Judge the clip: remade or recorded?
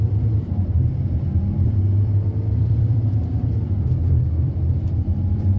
remade